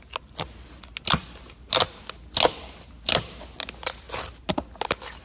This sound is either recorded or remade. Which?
recorded